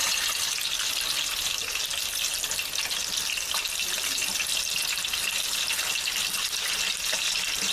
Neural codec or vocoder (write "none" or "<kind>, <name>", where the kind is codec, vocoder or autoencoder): none